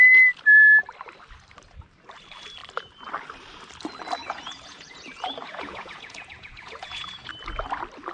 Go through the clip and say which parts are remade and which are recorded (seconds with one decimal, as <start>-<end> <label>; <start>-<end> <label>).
0.0-4.2 recorded; 4.2-7.3 remade; 7.3-8.1 recorded